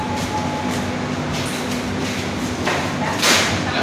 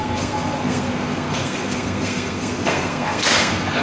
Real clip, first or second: first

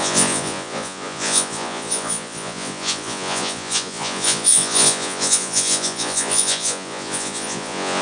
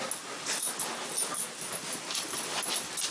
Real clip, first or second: second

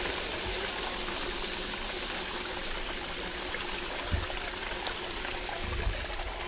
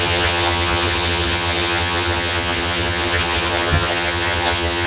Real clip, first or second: first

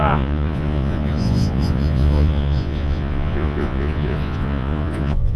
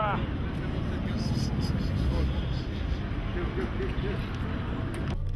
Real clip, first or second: second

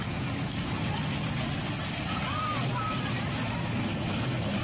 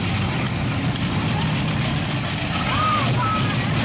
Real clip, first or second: second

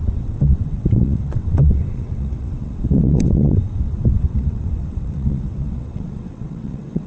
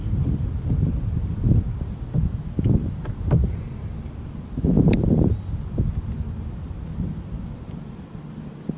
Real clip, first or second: second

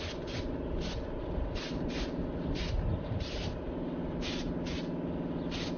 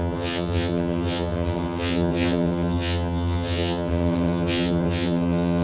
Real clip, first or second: first